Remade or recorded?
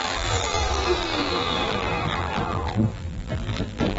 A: remade